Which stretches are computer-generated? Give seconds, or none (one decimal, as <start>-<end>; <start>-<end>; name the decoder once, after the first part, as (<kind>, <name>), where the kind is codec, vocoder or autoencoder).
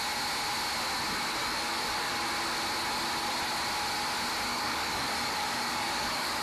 1.4-2.1 (codec, DAC); 4.5-6.4